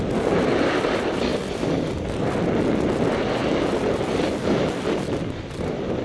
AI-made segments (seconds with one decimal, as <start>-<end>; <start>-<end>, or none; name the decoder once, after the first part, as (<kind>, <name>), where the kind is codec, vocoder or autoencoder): none